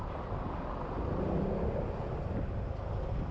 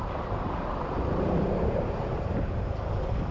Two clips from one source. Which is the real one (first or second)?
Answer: first